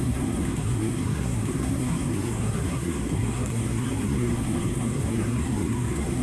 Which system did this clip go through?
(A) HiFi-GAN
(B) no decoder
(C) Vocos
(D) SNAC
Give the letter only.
D